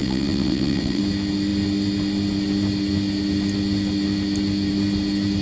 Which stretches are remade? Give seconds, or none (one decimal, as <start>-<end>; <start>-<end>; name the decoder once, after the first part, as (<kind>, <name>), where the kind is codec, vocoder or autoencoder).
0.0-1.0 (vocoder, WaveNeXt)